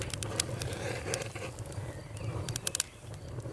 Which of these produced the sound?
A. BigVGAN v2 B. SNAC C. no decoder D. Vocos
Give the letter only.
A